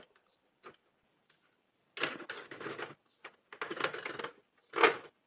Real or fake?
real